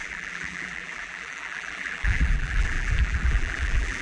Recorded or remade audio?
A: remade